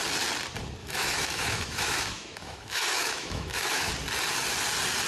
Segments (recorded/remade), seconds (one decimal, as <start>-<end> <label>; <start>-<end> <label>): 0.0-0.8 recorded; 0.8-3.9 remade; 3.9-5.1 recorded